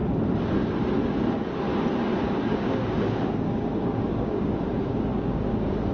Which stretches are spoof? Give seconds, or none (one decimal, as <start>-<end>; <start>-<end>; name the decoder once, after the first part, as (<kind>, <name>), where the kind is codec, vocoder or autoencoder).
2.2-5.9 (codec, DAC)